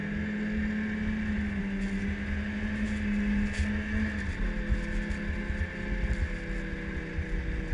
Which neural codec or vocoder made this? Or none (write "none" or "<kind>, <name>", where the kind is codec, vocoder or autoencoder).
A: none